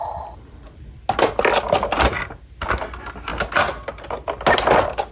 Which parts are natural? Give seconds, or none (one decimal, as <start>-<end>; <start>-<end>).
0.0-5.1